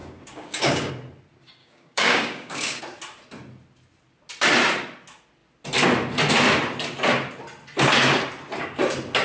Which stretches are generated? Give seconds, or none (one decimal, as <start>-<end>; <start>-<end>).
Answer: 0.0-0.9; 1.6-2.8